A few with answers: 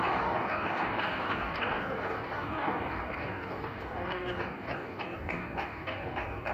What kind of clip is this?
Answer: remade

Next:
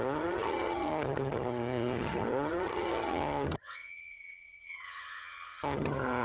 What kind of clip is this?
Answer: remade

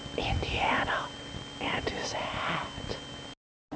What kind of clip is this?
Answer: recorded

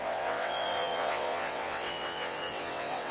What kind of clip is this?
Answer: remade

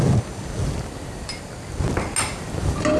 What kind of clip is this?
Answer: recorded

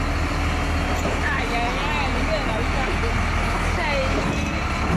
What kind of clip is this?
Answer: recorded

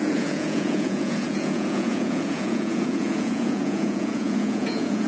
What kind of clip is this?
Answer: remade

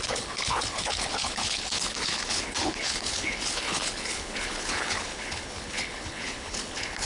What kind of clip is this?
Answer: remade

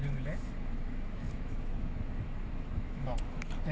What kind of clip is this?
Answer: remade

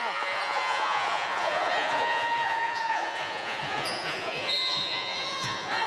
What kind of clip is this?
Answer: remade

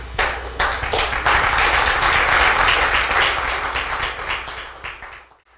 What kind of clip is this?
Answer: recorded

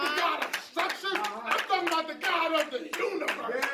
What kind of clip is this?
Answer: recorded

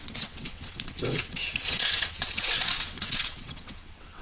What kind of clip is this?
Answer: remade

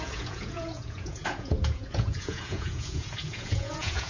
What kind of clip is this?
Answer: remade